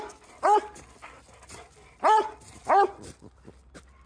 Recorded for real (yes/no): yes